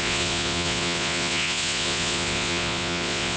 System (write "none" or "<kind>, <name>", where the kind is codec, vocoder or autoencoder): vocoder, Vocos